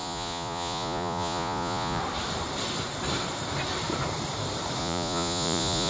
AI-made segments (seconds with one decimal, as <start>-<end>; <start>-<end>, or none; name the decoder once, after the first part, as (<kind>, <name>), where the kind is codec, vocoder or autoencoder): 0.0-2.0 (vocoder, Vocos); 4.8-5.9